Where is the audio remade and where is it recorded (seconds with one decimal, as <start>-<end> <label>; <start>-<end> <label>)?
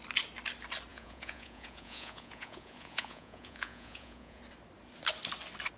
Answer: 0.0-0.9 recorded; 0.9-4.4 remade; 4.4-5.8 recorded